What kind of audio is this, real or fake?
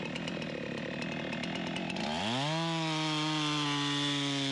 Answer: real